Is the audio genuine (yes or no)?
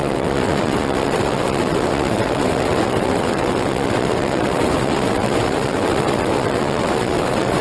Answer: no